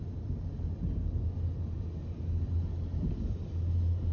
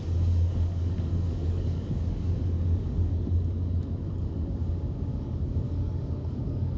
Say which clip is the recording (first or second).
first